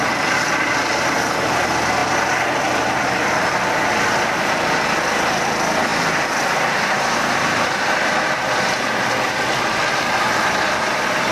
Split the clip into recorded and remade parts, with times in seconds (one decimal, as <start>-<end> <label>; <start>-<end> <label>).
0.0-2.0 remade; 2.0-2.6 recorded; 2.6-11.3 remade